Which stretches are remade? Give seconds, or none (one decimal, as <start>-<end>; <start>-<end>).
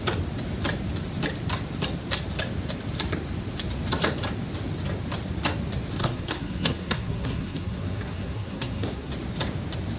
6.0-9.1